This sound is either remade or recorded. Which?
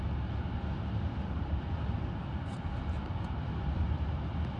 recorded